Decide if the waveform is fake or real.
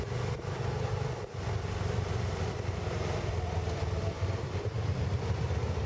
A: real